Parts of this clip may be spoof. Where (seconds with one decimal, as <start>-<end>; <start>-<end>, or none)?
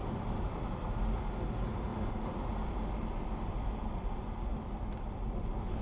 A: none